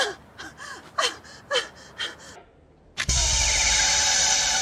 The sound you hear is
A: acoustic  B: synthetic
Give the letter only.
A